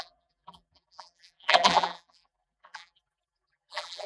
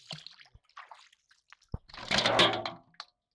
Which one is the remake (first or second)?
first